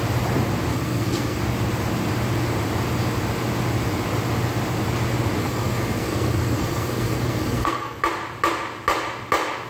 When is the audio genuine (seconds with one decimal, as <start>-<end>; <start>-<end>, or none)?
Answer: 0.0-0.7; 1.4-5.4; 8.0-9.7